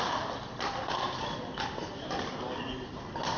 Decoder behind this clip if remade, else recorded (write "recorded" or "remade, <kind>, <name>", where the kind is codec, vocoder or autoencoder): recorded